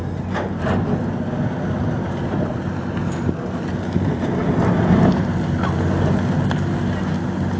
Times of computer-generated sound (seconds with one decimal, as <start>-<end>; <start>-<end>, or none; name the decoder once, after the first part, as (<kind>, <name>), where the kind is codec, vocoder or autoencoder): none

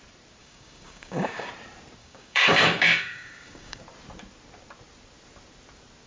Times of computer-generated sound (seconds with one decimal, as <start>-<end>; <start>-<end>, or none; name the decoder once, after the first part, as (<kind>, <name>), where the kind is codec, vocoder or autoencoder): 0.4-1.5 (codec, DAC); 2.0-3.8

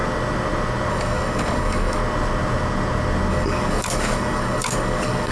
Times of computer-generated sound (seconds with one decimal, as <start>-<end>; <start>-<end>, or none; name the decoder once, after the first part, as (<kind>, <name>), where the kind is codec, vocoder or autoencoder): 0.9-2.0 (codec, DAC); 3.3-5.3

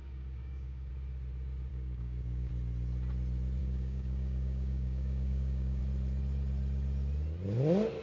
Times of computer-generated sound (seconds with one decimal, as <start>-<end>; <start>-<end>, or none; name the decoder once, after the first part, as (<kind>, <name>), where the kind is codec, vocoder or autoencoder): 0.0-0.9 (codec, DAC); 1.7-2.5; 3.6-5.8

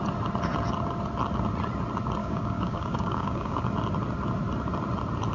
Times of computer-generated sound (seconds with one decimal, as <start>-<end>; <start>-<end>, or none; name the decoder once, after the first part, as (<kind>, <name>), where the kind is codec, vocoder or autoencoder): 2.2-3.7 (codec, DAC)

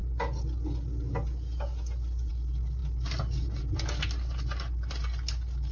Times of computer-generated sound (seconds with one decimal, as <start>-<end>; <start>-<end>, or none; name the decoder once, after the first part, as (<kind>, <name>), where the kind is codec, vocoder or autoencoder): none

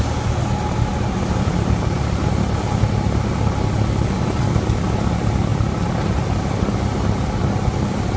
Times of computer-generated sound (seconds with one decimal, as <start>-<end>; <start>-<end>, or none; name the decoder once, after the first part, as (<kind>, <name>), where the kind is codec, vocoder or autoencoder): none

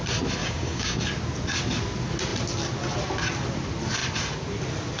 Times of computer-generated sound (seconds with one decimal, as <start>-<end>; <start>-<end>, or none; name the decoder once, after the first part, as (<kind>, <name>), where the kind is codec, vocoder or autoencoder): 0.4-1.0 (codec, DAC)